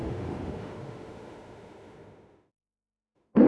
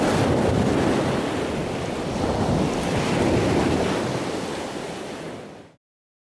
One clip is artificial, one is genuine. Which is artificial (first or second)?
first